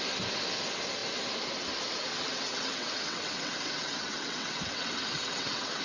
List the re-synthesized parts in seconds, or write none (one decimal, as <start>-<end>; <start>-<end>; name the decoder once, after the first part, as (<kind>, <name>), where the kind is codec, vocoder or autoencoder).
2.1-5.8 (vocoder, WaveNeXt)